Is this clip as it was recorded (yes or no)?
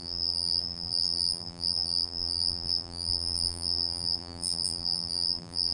no